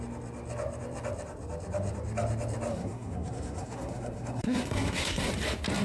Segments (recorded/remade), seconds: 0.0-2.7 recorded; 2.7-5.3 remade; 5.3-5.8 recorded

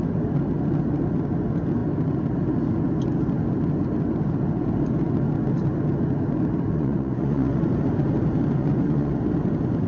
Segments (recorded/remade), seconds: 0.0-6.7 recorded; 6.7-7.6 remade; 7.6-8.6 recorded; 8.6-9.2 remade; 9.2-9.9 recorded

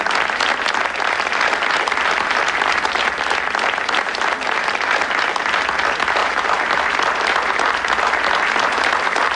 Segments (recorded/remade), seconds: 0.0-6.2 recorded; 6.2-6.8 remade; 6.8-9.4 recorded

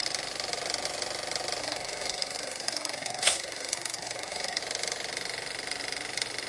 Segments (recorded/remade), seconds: 0.0-1.6 recorded; 1.6-4.6 remade; 4.6-6.5 recorded

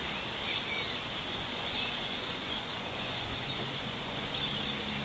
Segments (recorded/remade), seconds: 0.0-1.3 recorded; 1.3-4.3 remade; 4.3-5.0 recorded